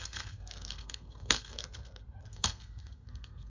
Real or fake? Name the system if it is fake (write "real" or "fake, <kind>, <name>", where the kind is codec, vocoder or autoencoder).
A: fake, codec, SNAC